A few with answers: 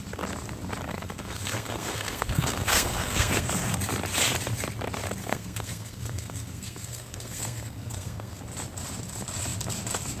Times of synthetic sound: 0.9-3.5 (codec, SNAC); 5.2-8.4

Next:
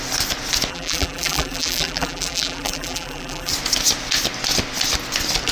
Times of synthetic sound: 0.7-3.5 (vocoder, BigVGAN v2)

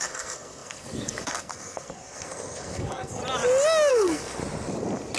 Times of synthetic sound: 0.0-3.2 (codec, SNAC); 3.9-4.4